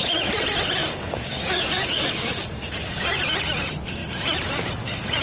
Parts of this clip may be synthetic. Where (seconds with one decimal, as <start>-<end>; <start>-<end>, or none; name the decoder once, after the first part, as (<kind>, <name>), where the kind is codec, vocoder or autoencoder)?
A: 0.8-3.2 (codec, DAC)